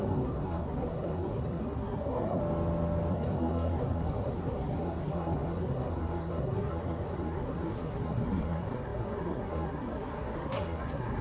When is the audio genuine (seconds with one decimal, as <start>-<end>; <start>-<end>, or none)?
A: 2.4-3.1